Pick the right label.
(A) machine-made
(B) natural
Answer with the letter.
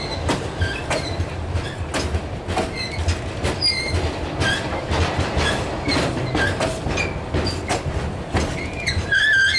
B